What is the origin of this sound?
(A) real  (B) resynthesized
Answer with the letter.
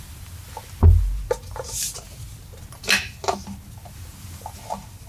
A